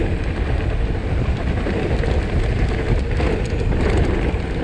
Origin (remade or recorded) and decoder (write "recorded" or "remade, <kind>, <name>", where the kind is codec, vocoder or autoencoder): recorded